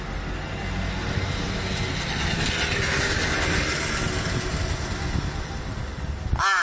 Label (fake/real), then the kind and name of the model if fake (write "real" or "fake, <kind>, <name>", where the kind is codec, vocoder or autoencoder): real